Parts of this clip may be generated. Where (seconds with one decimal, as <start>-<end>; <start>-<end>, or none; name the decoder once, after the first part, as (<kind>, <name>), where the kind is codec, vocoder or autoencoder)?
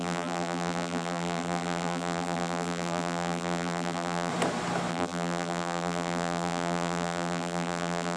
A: 0.0-4.3 (vocoder, BigVGAN v2); 4.9-8.2